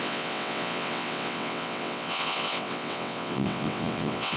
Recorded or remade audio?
remade